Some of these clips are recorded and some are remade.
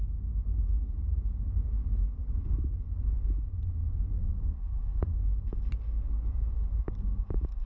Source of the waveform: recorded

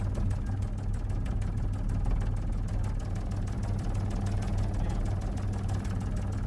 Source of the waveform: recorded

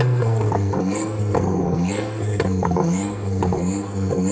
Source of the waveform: remade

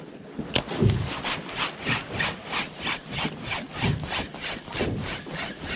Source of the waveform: recorded